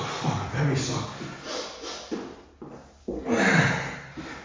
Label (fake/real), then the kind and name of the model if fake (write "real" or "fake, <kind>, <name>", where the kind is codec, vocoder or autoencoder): real